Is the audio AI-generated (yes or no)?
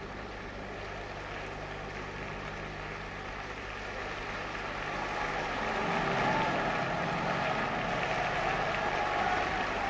no